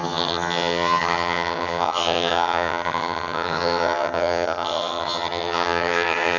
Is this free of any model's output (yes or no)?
no